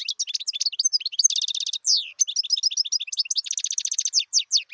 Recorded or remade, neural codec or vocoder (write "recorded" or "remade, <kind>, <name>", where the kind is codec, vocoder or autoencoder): recorded